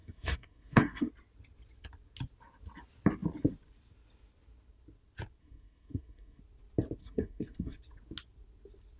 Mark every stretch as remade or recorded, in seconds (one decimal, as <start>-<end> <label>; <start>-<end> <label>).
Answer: 0.0-1.1 remade; 1.1-5.4 recorded; 5.4-6.4 remade; 6.4-7.0 recorded; 7.0-7.8 remade; 7.8-9.0 recorded